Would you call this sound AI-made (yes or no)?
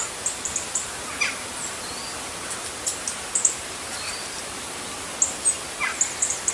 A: no